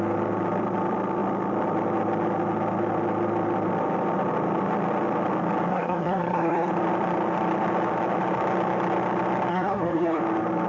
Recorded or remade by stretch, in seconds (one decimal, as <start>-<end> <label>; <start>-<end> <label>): 0.0-5.7 recorded; 5.7-6.7 remade; 6.7-9.5 recorded; 9.5-10.2 remade; 10.2-10.7 recorded